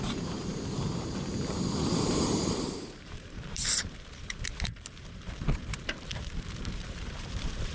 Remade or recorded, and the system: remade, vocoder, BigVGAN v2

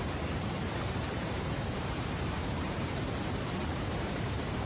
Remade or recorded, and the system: remade, vocoder, BigVGAN v2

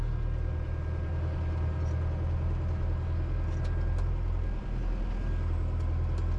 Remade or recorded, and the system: recorded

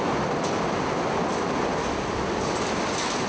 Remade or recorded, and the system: recorded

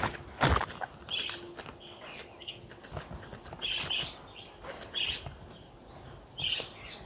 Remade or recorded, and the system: recorded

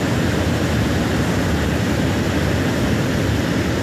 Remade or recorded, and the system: recorded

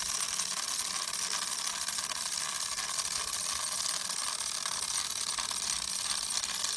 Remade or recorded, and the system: recorded